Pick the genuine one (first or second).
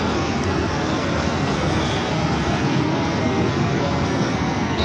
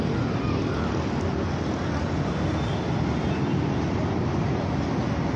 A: second